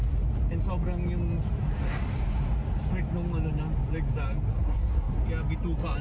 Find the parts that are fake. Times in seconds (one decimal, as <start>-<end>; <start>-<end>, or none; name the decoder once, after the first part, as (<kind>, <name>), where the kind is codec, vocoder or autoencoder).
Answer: 4.5-5.2 (codec, SNAC)